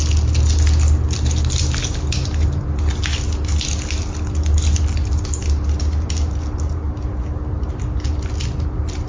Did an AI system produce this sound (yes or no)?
no